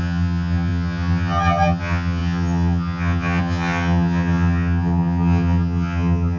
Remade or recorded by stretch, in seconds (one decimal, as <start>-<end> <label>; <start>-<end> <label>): 0.0-6.4 remade